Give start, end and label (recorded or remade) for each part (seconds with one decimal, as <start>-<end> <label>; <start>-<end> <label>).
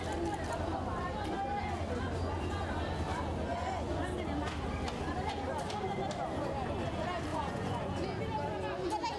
0.0-3.5 recorded; 3.5-4.0 remade; 4.0-7.3 recorded; 7.3-8.2 remade; 8.2-9.2 recorded